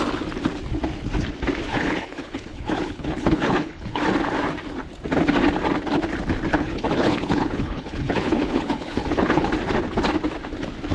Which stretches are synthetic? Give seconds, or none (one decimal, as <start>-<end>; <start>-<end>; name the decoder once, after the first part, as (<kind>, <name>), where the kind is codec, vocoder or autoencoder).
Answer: 1.7-4.0 (codec, HILCodec); 6.5-9.5